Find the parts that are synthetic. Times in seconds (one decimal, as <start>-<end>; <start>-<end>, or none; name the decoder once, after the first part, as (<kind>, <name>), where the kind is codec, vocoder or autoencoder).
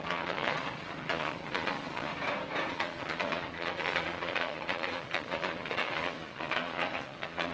0.0-2.1 (vocoder, Vocos); 2.7-7.5